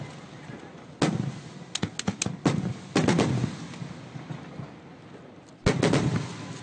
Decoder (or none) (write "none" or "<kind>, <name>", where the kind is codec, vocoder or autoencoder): none